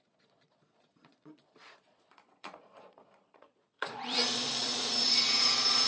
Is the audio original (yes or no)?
no